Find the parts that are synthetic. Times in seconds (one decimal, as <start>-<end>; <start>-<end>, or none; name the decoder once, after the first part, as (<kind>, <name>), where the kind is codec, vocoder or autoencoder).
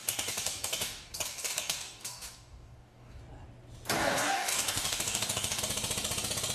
0.0-3.2 (codec, DAC); 4.0-5.6